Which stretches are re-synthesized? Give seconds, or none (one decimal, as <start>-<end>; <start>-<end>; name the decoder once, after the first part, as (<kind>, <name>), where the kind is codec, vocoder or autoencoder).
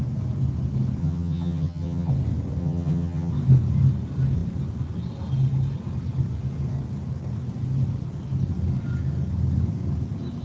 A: 1.0-2.1 (vocoder, HiFi-GAN); 2.6-3.3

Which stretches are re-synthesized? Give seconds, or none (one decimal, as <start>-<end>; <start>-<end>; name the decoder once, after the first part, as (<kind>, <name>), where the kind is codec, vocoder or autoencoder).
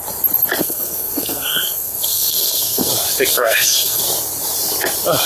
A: 0.6-2.9 (codec, SNAC); 3.3-4.0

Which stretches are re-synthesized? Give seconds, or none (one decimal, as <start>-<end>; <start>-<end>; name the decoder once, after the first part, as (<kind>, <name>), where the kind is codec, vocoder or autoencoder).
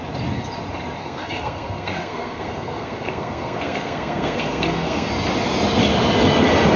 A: 1.0-5.1 (codec, SNAC)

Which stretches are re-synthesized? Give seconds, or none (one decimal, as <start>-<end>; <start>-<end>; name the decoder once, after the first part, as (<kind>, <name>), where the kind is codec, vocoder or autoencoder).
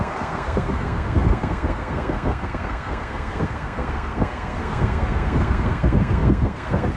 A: 0.0-7.0 (codec, SNAC)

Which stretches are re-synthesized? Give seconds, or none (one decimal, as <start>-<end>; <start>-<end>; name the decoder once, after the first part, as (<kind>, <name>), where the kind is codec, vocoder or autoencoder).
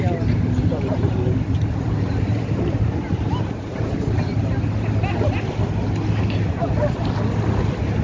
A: 0.7-4.4 (vocoder, BigVGAN v2)